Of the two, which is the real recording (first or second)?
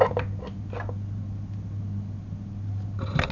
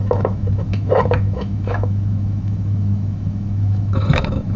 first